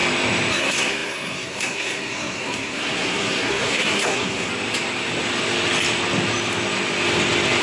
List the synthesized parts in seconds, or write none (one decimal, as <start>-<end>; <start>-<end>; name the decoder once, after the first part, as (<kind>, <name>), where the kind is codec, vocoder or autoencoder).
0.5-4.5 (codec, SNAC)